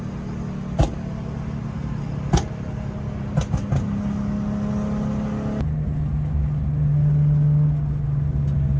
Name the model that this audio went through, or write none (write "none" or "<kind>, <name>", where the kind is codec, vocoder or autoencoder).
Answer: none